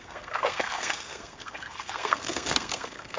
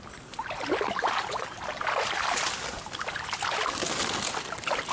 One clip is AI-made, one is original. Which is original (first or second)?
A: second